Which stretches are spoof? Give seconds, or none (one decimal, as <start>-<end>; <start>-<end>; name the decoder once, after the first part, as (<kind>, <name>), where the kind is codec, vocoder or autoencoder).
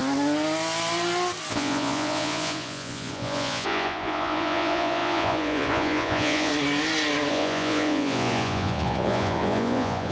1.5-6.5 (vocoder, Vocos); 7.3-10.1